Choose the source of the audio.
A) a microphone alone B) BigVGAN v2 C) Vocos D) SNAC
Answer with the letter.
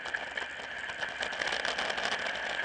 A